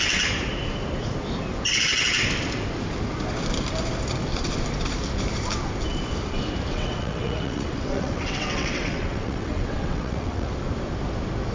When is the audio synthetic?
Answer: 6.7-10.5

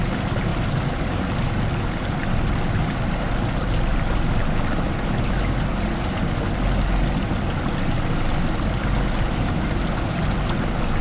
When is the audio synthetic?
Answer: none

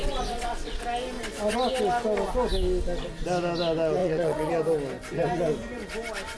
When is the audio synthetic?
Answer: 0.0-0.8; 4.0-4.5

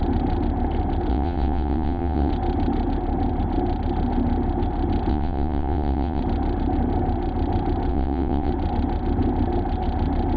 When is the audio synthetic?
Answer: 1.1-2.3; 5.1-6.2; 7.9-8.5